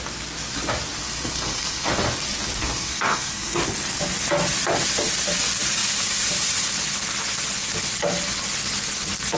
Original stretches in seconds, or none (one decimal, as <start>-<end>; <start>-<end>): 0.0-1.0; 1.9-2.6; 3.6-9.4